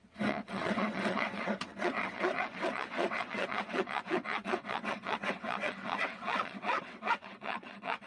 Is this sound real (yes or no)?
no